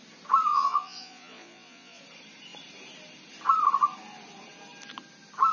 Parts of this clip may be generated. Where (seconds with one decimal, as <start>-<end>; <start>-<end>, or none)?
0.5-2.0